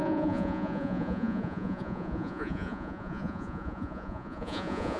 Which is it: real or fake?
fake